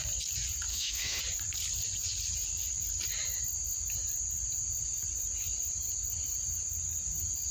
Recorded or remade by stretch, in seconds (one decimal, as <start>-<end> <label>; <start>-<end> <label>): 0.0-0.7 recorded; 0.7-1.2 remade; 1.2-7.5 recorded